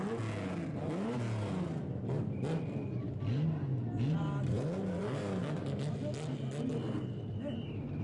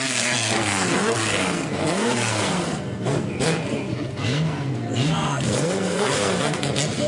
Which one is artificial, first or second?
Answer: second